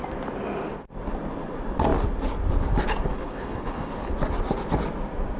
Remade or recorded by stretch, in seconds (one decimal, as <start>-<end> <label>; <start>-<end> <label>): 0.0-3.1 recorded; 3.1-4.1 remade; 4.1-5.4 recorded